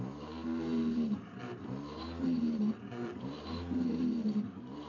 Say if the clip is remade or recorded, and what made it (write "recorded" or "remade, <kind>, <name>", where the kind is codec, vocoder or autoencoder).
remade, vocoder, BigVGAN v2